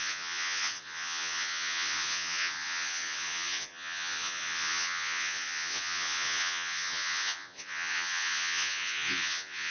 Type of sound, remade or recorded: remade